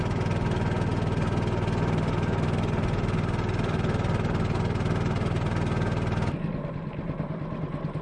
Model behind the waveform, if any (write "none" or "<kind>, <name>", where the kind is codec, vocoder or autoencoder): none